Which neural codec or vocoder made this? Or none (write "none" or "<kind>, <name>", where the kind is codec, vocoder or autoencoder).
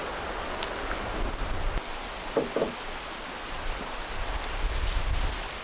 none